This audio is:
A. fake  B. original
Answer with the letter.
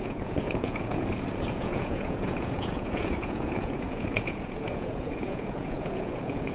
A